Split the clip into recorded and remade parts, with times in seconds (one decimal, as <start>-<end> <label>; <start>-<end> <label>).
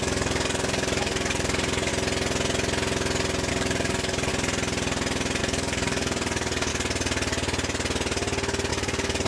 0.0-1.9 remade; 1.9-3.5 recorded; 3.5-4.3 remade; 4.3-5.4 recorded; 5.4-6.7 remade; 6.7-8.7 recorded; 8.7-9.3 remade